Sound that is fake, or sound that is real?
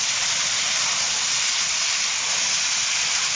real